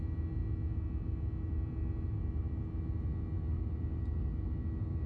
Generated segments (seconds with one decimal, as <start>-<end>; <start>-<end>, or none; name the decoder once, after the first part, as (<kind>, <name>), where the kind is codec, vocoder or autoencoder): none